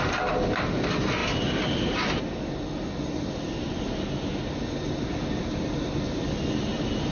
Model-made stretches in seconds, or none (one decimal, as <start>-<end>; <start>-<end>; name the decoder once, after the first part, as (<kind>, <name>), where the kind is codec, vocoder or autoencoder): none